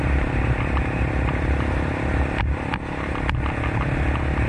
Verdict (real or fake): real